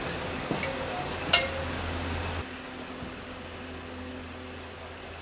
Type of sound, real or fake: real